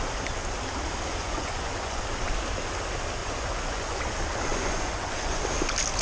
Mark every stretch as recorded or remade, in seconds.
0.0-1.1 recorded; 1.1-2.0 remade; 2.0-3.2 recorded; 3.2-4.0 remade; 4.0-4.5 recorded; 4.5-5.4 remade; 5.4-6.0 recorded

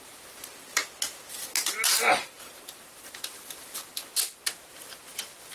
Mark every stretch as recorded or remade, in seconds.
0.0-0.8 remade; 0.8-2.1 recorded; 2.1-3.9 remade; 3.9-5.5 recorded

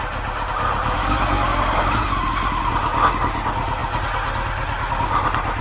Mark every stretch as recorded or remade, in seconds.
0.0-5.6 recorded